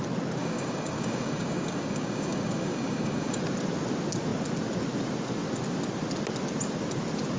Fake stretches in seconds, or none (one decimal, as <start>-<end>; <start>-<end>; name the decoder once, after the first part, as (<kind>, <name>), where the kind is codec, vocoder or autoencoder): 0.4-3.4 (codec, DAC)